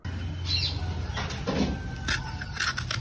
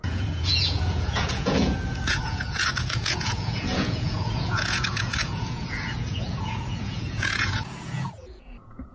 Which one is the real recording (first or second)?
first